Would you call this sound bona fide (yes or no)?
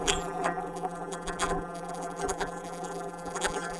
no